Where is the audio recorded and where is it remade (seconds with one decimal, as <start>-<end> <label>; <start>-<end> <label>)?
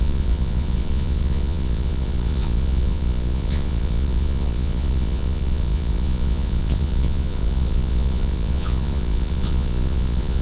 0.0-10.4 remade